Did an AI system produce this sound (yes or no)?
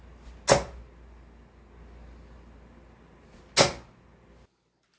no